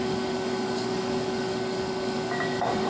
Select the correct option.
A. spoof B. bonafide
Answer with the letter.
A